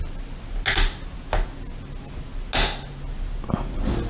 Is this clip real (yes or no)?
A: yes